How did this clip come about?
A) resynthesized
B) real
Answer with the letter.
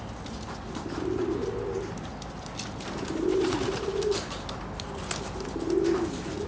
B